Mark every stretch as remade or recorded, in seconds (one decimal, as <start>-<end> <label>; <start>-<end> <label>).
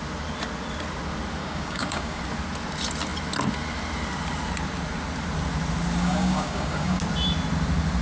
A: 0.0-1.4 recorded; 1.4-2.2 remade; 2.2-6.0 recorded; 6.0-7.0 remade; 7.0-8.0 recorded